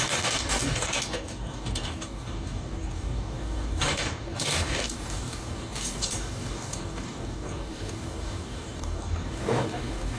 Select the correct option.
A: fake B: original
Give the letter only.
A